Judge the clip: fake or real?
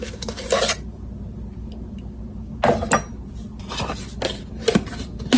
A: real